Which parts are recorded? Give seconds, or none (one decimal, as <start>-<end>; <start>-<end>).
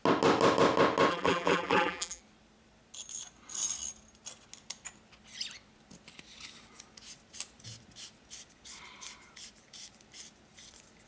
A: 0.0-1.1; 2.2-11.1